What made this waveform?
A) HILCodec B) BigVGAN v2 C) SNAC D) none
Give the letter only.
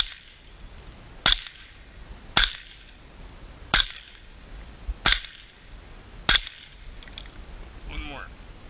D